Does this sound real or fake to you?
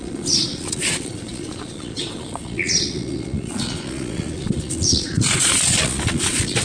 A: fake